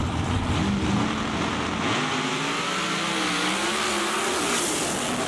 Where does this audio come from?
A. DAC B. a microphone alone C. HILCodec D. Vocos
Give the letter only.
B